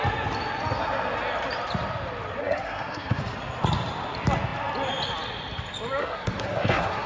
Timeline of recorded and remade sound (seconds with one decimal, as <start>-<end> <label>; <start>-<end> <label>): 0.0-2.4 recorded; 2.4-3.2 remade; 3.2-6.0 recorded; 6.0-7.1 remade